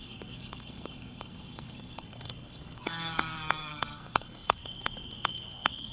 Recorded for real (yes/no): no